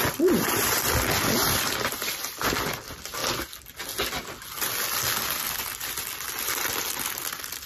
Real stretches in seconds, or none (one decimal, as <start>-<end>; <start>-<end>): 3.2-7.7